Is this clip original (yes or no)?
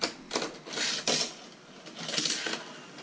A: yes